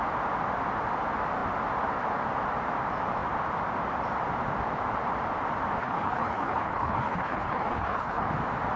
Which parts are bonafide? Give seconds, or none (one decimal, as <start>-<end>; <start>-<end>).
0.0-5.8; 8.3-8.8